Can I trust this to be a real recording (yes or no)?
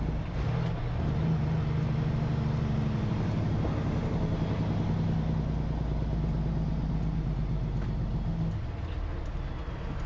yes